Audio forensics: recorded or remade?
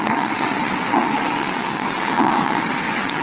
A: remade